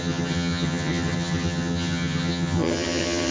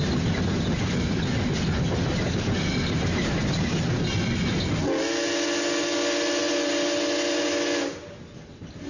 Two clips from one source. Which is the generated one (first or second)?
first